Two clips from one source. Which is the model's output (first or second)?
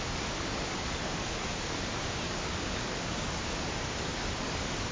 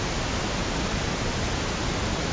first